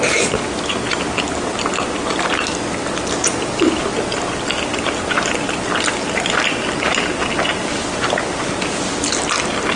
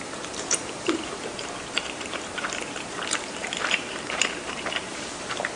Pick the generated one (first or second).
second